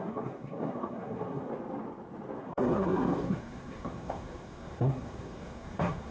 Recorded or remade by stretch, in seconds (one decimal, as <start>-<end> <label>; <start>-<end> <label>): 0.0-1.5 remade; 1.5-2.4 recorded; 2.4-6.1 remade